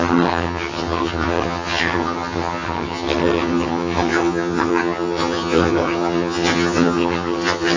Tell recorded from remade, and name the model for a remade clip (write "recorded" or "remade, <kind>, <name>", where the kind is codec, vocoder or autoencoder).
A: remade, vocoder, HiFi-GAN